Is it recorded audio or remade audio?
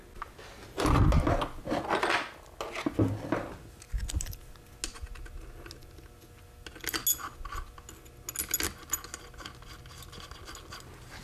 recorded